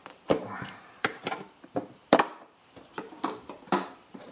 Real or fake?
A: fake